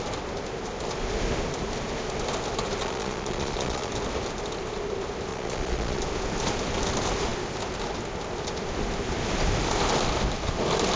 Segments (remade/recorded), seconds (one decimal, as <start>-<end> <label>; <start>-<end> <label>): 0.0-2.8 recorded; 2.8-3.9 remade; 3.9-5.3 recorded; 5.3-6.0 remade; 6.0-11.0 recorded